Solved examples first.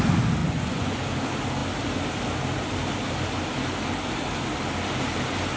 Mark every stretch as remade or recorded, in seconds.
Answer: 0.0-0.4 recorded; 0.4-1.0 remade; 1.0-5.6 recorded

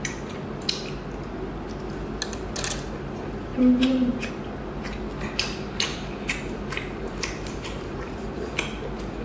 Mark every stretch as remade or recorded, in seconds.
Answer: 0.0-3.5 recorded; 3.5-4.3 remade; 4.3-5.9 recorded; 5.9-8.5 remade; 8.5-9.2 recorded

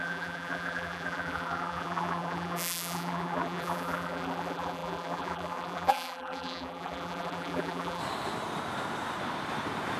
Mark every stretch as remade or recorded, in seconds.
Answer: 0.0-8.0 remade; 8.0-10.0 recorded

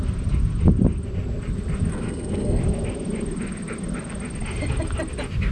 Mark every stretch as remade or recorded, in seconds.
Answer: 0.0-1.9 recorded; 1.9-2.6 remade; 2.6-5.5 recorded

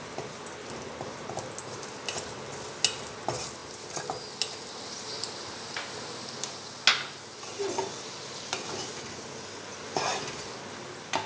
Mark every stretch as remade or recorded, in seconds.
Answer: 0.0-11.3 recorded

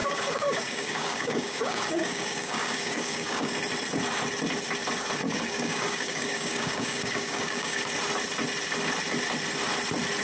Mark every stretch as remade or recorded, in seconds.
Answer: 0.0-3.5 remade; 3.5-5.2 recorded; 5.2-7.8 remade; 7.8-10.2 recorded

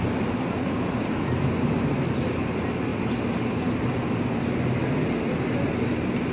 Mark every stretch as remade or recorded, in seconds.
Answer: 0.0-6.3 recorded

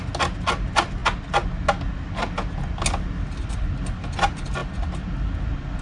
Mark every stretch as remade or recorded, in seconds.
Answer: 0.0-5.8 recorded